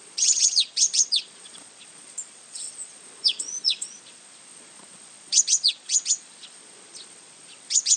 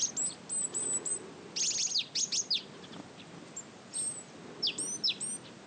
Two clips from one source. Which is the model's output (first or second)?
first